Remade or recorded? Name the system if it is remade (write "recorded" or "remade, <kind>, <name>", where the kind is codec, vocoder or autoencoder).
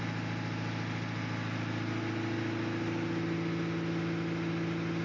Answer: recorded